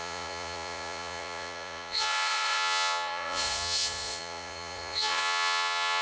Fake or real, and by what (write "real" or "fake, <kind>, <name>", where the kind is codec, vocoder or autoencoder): fake, vocoder, Vocos